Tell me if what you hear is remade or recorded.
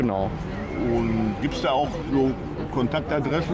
recorded